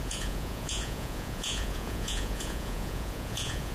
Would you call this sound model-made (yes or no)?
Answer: yes